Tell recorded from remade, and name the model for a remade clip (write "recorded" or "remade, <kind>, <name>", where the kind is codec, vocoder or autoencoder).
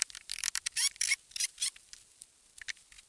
recorded